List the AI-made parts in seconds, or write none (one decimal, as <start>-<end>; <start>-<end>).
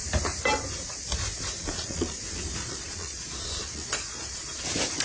1.6-2.2; 2.6-4.6